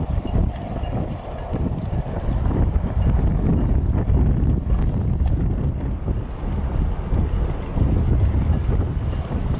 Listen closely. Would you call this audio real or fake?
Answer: real